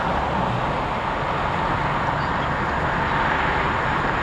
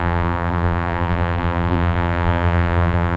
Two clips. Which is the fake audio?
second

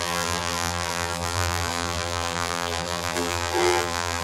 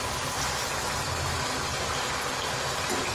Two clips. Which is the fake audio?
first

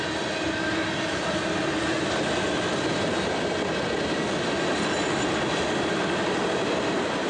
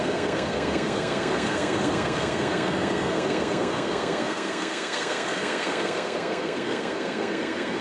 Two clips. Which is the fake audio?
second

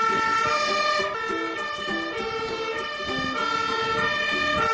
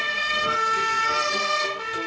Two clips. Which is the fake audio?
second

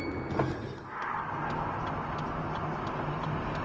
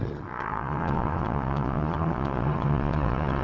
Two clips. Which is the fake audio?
second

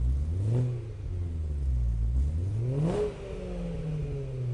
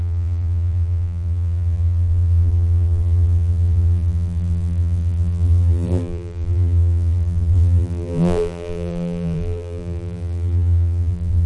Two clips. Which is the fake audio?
second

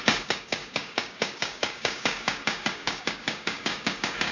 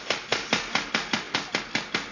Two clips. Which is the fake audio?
first